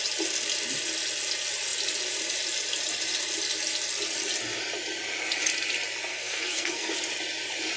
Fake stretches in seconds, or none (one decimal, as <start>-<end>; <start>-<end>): 6.1-6.9